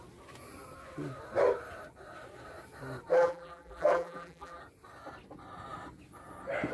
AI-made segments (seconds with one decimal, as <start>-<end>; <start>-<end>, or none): 3.1-4.6